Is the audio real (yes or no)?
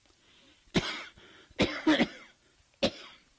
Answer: yes